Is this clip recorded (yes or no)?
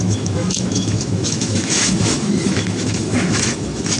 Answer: no